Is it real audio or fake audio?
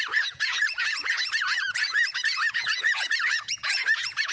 fake